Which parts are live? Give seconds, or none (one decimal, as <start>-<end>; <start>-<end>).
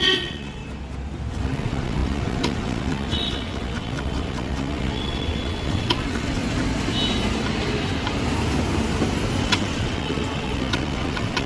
0.6-1.3; 6.4-9.4